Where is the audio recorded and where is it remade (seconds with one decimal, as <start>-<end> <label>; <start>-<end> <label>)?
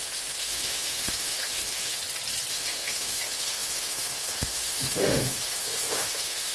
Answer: 0.0-2.0 remade; 2.0-2.5 recorded; 2.5-6.5 remade